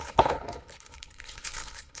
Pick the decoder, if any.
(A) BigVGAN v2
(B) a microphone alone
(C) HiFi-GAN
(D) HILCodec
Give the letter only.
D